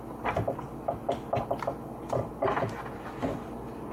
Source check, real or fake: real